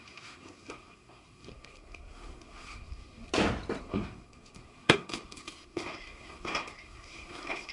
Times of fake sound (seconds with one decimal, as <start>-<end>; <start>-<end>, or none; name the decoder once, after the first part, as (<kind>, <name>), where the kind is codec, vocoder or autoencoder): 0.0-3.3 (codec, SNAC); 3.8-7.7

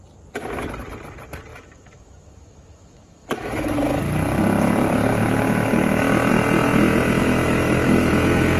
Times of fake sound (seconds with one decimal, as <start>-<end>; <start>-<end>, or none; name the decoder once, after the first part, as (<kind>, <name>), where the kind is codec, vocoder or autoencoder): 1.5-4.0 (autoencoder, DAC-VAE); 5.1-6.3; 7.2-8.1

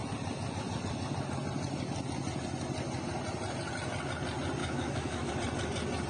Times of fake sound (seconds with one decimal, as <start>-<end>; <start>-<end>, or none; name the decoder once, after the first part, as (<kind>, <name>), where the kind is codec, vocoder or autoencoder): 4.6-5.3 (autoencoder, DAC-VAE)

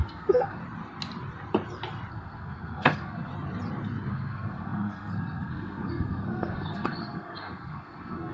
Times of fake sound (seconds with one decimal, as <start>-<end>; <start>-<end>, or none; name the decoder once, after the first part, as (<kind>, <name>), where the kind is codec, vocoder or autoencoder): 0.0-0.6 (codec, SNAC); 2.1-3.3; 4.1-8.3

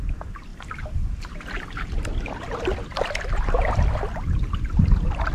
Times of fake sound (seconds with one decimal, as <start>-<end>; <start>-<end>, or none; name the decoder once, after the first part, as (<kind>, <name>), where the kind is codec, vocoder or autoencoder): 0.5-2.0 (vocoder, BigVGAN v2); 2.9-3.9

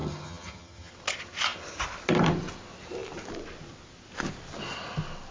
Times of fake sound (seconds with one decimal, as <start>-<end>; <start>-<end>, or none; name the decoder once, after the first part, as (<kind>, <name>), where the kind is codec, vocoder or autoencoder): 0.0-0.9 (vocoder, HiFi-GAN)